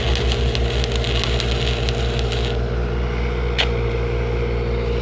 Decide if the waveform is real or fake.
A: real